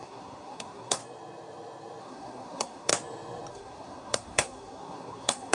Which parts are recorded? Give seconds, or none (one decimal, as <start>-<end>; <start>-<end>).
1.0-2.0; 2.9-3.5